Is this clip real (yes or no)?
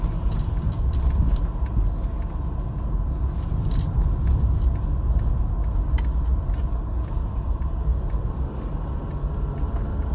yes